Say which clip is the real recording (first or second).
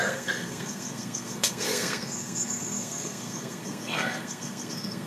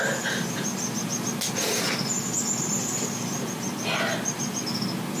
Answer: second